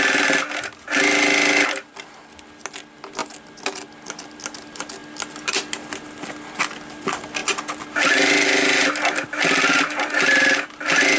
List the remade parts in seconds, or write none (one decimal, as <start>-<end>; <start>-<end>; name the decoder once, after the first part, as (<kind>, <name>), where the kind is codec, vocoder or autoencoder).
none